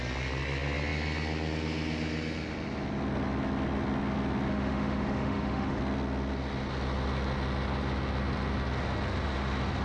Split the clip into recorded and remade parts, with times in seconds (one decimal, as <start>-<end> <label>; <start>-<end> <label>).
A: 0.0-4.5 recorded; 4.5-5.8 remade; 5.8-9.8 recorded